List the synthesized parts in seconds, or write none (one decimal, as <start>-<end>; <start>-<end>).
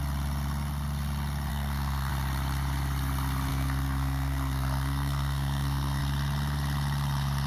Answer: 1.5-2.1; 3.5-6.0